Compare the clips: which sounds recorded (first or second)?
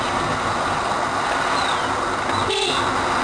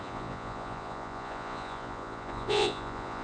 first